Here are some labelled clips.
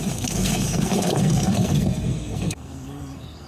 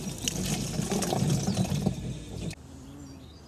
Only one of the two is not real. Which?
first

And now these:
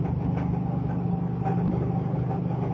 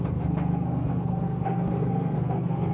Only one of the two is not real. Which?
second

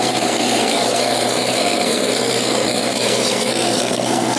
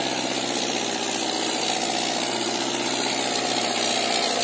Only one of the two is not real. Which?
first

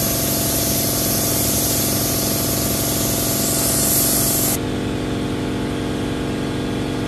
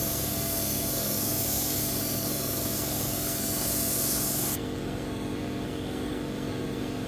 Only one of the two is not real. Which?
second